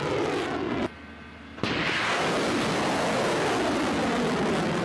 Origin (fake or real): real